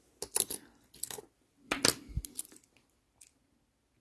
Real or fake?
real